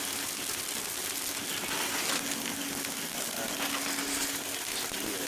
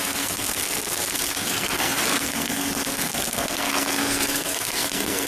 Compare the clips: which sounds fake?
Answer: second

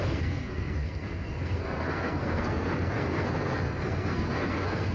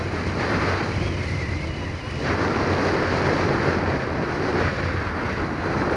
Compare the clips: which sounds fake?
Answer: first